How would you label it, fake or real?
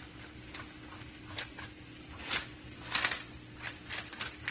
real